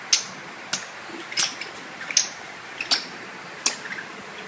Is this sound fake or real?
real